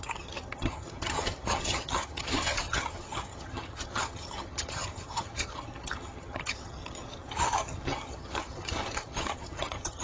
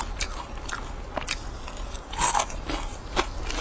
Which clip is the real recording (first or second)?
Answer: second